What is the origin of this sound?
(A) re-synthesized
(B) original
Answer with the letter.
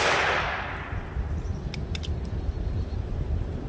B